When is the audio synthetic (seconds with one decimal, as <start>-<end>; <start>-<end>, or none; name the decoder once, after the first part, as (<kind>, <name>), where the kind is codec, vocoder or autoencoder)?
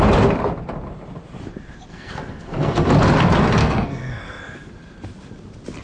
1.9-2.9 (codec, SNAC); 3.6-4.7